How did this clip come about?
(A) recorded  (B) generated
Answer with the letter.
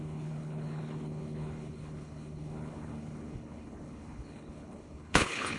B